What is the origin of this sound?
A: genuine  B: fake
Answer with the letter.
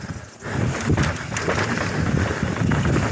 A